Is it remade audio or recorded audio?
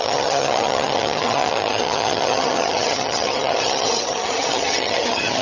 remade